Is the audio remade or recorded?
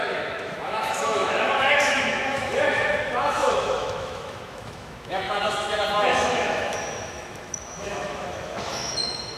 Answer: remade